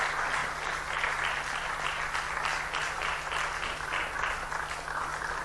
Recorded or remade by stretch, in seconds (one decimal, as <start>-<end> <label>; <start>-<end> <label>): 0.0-5.4 recorded